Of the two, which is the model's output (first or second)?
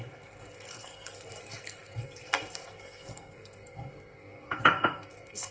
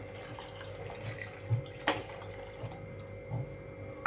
first